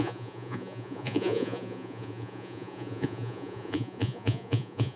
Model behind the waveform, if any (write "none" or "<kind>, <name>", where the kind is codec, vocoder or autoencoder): vocoder, Vocos